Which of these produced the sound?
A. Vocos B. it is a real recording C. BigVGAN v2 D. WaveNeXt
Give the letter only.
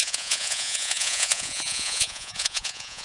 A